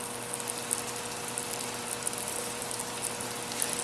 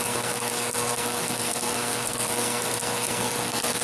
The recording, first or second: first